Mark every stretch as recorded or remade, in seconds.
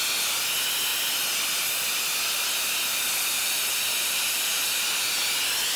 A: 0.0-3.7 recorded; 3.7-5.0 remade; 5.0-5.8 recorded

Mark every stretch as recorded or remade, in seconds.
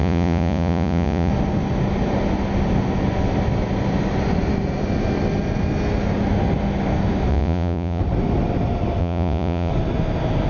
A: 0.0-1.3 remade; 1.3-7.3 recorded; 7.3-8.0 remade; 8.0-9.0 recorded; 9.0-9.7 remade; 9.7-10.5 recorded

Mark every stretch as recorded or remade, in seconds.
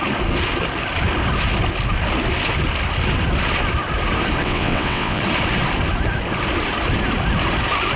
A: 0.0-4.4 recorded; 4.4-5.2 remade; 5.2-8.0 recorded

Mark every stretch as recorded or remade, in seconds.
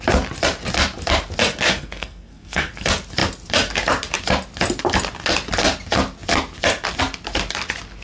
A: 0.0-1.7 recorded; 1.7-2.7 remade; 2.7-8.0 recorded